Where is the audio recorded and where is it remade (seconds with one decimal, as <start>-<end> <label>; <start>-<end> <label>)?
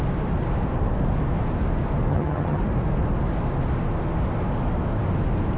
0.0-2.1 recorded; 2.1-2.6 remade; 2.6-5.6 recorded